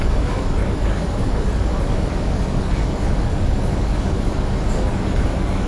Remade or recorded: remade